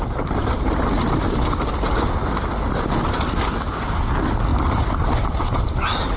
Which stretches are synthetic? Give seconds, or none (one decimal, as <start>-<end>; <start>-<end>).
0.4-1.7; 4.5-6.2